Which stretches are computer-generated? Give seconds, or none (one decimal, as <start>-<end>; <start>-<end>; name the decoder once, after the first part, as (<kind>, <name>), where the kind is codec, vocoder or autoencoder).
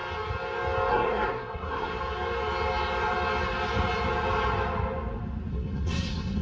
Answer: 0.9-2.0 (codec, SNAC); 5.5-6.4